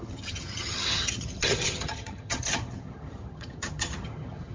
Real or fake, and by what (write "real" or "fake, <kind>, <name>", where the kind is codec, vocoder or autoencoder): fake, vocoder, HiFi-GAN